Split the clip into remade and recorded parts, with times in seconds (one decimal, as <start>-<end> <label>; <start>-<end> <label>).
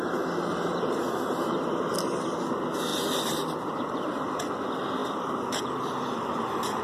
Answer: 0.0-2.9 recorded; 2.9-3.7 remade; 3.7-5.0 recorded; 5.0-6.8 remade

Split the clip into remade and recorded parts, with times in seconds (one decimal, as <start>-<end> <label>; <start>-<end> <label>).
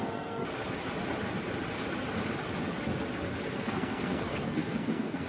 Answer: 0.0-0.4 remade; 0.4-3.6 recorded; 3.6-5.3 remade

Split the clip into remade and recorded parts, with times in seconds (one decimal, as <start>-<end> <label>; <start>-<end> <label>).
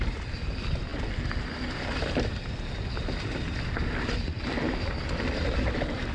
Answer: 0.0-6.1 recorded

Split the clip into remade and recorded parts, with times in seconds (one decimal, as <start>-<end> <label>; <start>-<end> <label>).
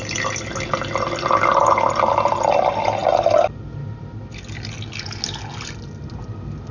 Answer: 0.0-6.7 recorded